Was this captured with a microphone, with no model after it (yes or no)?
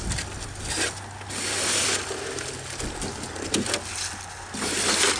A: yes